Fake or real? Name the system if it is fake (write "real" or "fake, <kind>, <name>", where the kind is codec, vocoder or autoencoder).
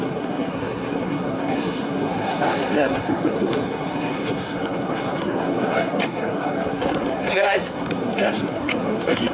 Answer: fake, codec, SNAC